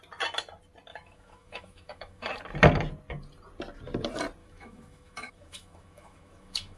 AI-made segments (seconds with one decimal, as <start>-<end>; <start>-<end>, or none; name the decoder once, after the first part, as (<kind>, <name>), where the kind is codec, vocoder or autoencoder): 0.9-2.3 (autoencoder, DAC-VAE); 4.4-6.8